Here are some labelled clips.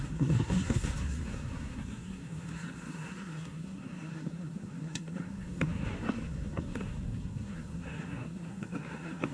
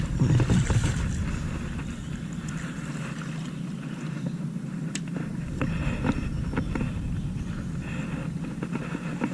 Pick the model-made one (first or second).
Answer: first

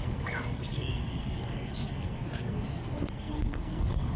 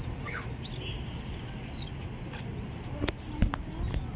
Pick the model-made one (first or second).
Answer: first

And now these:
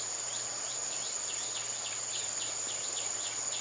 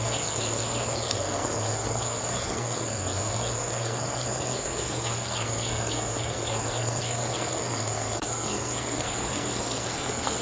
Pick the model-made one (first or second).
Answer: second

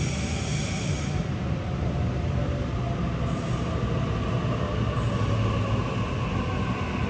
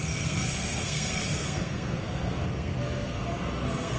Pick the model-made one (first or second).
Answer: second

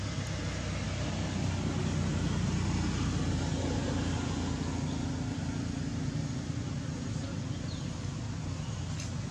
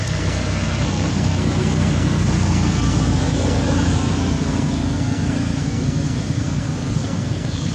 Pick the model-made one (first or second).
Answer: second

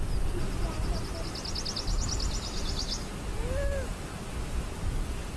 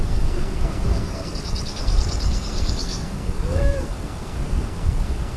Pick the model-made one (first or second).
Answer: second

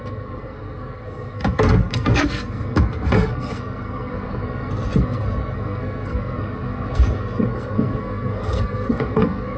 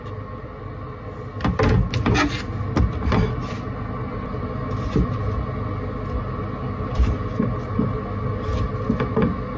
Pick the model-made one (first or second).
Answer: first